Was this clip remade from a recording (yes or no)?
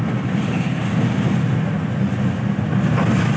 no